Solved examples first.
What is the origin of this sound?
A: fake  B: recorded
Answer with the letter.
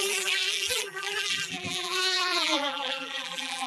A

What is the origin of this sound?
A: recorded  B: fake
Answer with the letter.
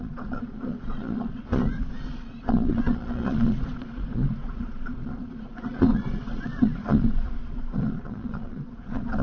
B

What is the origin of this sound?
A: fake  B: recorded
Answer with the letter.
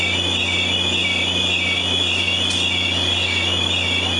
B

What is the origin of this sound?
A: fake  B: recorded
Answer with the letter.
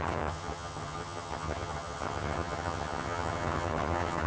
A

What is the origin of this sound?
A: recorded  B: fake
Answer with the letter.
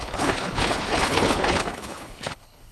B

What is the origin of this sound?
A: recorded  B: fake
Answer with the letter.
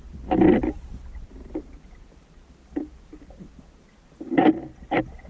A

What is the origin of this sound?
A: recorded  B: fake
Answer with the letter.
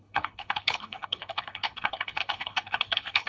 B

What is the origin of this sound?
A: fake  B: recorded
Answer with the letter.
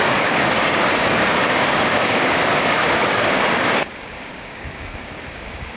A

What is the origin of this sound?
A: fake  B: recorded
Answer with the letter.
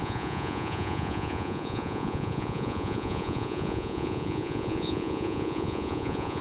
A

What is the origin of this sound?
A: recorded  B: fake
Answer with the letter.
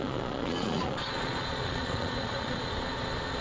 B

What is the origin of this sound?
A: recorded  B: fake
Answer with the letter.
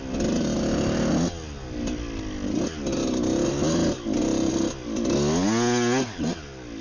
A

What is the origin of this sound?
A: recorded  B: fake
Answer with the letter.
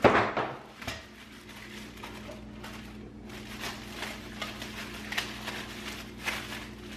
A